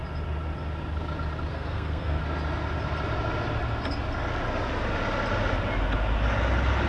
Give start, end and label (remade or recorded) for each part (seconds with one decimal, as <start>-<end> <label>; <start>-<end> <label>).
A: 0.0-1.5 recorded; 1.5-2.2 remade; 2.2-6.9 recorded